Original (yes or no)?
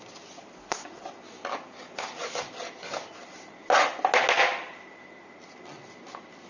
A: yes